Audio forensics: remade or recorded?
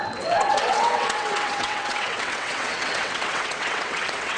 remade